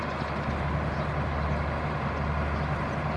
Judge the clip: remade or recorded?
recorded